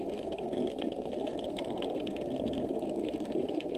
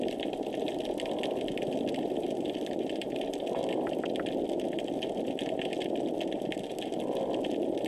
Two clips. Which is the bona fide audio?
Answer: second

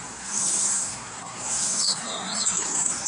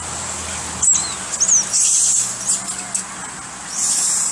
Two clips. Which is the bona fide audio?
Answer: second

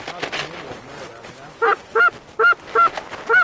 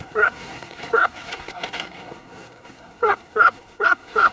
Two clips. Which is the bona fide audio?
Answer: first